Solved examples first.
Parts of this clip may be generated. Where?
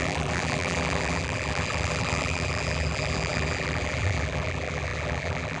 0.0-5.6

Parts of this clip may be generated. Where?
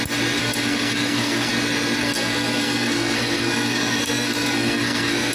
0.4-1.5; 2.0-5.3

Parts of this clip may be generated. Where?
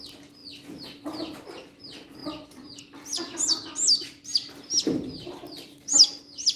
none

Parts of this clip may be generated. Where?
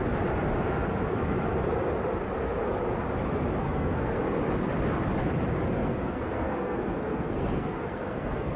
3.6-4.2; 5.8-8.6